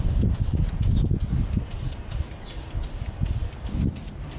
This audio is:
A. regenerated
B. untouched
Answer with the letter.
B